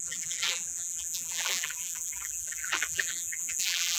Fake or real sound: fake